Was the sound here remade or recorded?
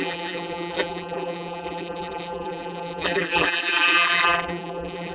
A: remade